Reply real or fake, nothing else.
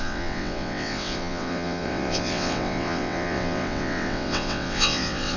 fake